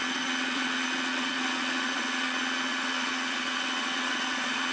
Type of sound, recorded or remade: remade